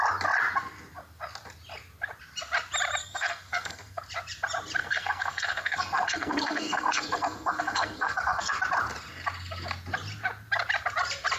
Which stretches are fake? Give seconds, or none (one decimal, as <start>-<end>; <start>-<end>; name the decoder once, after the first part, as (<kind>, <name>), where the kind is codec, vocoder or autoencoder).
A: 3.0-4.0 (codec, SNAC); 4.8-8.6